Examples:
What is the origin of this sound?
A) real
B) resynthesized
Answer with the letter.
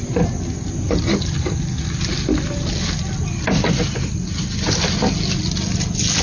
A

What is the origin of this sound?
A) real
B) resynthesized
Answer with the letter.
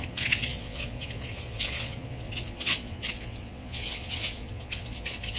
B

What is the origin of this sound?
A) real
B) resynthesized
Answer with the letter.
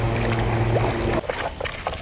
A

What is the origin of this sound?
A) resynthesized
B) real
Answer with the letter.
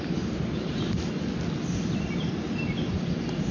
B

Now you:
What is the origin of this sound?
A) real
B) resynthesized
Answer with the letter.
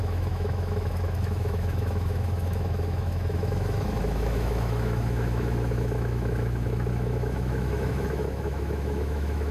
B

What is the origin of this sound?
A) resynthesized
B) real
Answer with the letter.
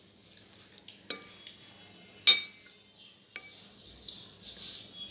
B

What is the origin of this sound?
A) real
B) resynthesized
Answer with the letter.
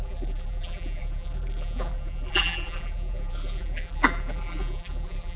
B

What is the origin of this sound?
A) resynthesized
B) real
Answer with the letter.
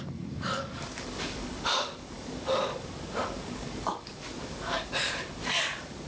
A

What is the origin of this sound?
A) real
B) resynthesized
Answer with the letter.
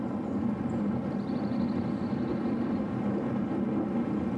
A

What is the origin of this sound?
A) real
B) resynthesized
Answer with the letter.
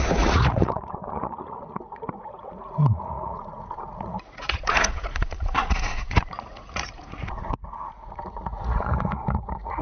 B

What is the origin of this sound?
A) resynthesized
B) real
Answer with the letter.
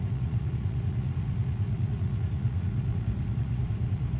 A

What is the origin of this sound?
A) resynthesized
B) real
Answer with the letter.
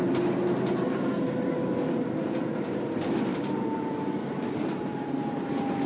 B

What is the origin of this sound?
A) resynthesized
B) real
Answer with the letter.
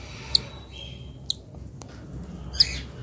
B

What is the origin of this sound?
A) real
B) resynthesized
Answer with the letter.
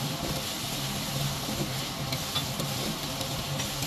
A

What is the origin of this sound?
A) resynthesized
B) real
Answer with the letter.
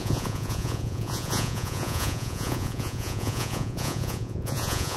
A